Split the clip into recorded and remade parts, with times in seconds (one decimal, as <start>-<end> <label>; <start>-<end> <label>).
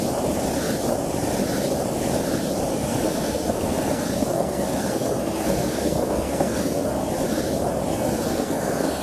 0.0-2.7 recorded; 2.7-7.1 remade; 7.1-7.9 recorded; 7.9-9.0 remade